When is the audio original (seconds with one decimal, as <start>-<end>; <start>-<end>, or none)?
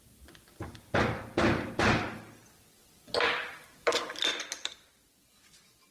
0.0-5.9